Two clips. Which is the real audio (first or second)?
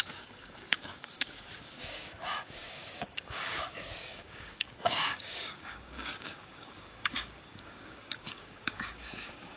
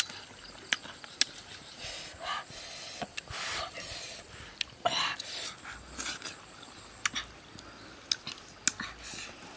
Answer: second